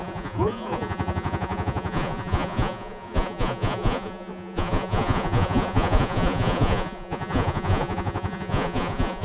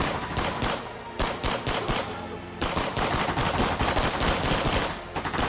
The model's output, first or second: first